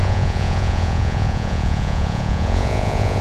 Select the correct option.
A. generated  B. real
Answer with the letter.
A